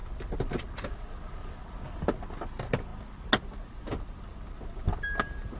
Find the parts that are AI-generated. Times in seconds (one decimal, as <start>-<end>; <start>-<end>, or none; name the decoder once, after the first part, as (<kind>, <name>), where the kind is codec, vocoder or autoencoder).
none